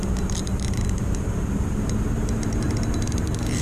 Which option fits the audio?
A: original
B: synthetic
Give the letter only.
B